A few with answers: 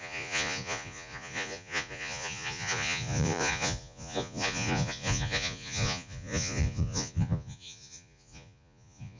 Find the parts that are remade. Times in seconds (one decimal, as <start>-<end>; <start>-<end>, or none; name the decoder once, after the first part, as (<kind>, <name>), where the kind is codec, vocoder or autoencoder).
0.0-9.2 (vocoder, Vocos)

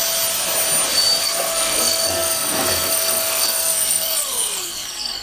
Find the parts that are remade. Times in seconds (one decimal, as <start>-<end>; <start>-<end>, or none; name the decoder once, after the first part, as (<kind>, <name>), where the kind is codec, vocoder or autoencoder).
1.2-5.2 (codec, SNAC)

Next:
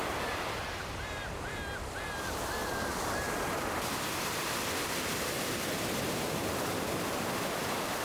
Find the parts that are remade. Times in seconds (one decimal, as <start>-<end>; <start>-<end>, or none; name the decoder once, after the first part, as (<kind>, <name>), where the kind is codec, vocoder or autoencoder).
none